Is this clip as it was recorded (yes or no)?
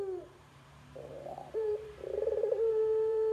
no